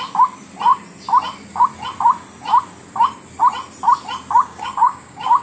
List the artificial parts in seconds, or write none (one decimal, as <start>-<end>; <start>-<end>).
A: 4.4-5.4

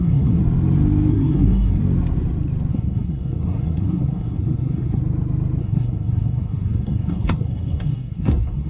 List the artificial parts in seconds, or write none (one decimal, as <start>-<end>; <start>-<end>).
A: 0.0-0.4; 1.1-1.8; 2.7-5.0; 5.6-8.7

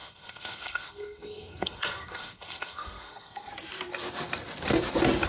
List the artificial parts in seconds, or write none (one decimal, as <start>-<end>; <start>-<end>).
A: 0.0-3.5

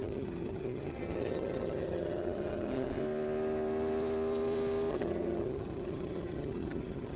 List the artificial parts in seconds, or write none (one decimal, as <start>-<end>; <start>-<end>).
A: 0.0-3.0; 4.9-7.2

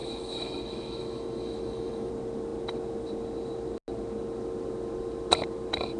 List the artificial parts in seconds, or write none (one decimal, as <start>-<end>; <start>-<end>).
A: 0.0-2.1